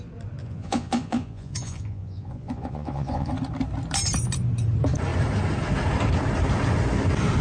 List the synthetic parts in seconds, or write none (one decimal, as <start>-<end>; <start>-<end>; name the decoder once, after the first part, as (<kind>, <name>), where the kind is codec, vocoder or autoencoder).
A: 0.4-3.3 (vocoder, Vocos)